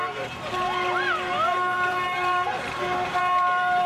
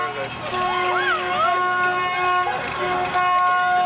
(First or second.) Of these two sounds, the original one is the second